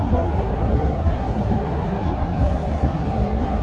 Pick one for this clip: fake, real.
fake